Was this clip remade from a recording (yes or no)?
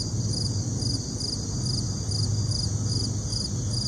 no